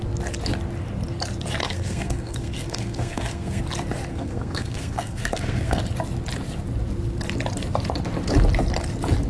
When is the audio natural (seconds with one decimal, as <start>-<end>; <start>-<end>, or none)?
0.0-1.6; 3.6-4.1; 5.8-9.3